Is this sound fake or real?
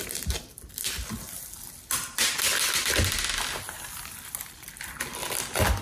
real